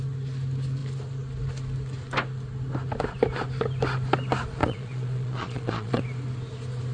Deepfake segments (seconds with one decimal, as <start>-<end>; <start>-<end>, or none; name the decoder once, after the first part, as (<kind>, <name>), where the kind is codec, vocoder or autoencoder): 4.6-6.0 (vocoder, Vocos)

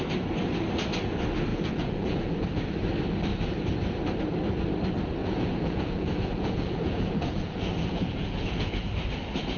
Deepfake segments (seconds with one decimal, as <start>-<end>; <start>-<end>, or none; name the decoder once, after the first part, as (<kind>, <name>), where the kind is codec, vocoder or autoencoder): 1.5-2.2 (vocoder, Vocos); 5.2-8.9

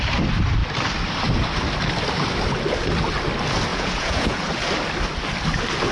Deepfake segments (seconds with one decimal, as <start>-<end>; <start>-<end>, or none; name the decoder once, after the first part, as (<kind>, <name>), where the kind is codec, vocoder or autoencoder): 3.7-4.4 (vocoder, Vocos)

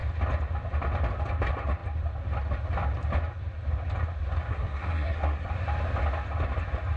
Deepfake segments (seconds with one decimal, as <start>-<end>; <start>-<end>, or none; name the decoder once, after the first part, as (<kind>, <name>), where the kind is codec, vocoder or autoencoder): 4.5-5.5 (codec, SNAC)

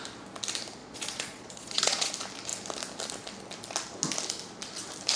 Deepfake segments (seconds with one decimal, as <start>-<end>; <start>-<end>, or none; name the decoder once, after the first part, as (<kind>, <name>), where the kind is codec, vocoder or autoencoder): 0.8-2.1 (vocoder, Vocos)

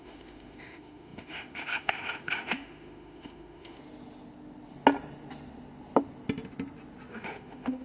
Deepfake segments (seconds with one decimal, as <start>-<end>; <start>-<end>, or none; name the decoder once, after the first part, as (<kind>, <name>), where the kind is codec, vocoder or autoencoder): 0.0-3.8 (autoencoder, DAC-VAE); 7.1-7.8

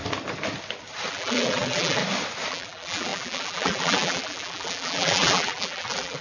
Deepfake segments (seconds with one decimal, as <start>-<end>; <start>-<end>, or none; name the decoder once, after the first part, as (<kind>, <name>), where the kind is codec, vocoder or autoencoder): 1.1-2.0 (vocoder, BigVGAN v2); 2.5-6.2

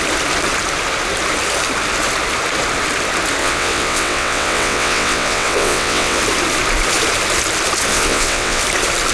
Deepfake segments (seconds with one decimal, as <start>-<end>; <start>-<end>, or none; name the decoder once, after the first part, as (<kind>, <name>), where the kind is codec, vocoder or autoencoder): 3.4-6.2 (vocoder, WaveNeXt); 7.9-8.6